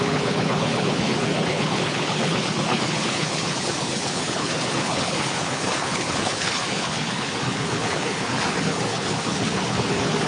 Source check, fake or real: fake